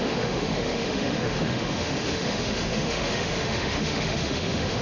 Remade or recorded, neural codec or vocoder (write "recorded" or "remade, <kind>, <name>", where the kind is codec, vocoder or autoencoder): remade, autoencoder, DAC-VAE